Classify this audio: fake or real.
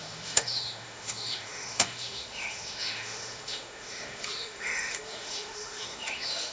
fake